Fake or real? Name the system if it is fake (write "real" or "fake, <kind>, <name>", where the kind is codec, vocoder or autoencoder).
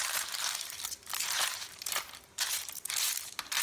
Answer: fake, vocoder, BigVGAN v2